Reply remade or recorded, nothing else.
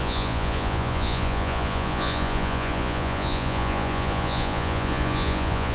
remade